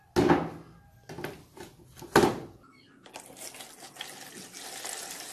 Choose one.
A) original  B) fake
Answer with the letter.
A